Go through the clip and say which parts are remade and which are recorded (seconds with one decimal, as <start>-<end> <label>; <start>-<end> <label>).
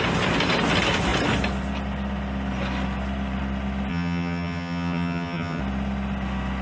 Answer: 0.0-3.9 recorded; 3.9-5.6 remade; 5.6-6.6 recorded